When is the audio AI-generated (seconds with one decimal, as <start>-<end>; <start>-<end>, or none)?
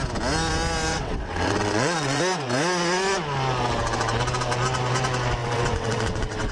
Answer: 0.9-2.2; 5.4-6.5